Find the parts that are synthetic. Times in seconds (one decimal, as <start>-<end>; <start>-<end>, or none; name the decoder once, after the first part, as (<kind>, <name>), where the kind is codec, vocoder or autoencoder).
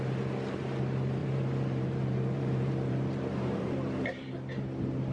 1.2-4.3 (vocoder, BigVGAN v2)